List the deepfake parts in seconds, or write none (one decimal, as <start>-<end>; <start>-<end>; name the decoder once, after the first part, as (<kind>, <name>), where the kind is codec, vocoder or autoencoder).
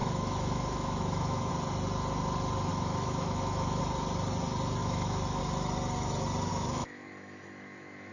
0.0-1.5 (autoencoder, DAC-VAE); 2.7-3.8; 4.8-5.4; 6.5-8.1